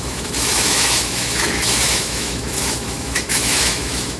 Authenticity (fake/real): fake